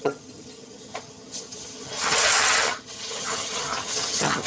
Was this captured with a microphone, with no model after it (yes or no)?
no